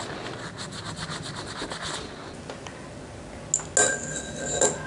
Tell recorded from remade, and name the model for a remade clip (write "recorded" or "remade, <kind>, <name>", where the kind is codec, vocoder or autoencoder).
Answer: recorded